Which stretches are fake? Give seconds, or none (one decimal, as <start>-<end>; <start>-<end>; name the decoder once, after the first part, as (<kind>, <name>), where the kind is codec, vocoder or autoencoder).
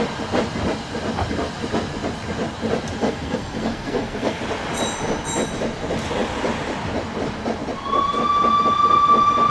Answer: 3.0-4.4 (codec, SNAC)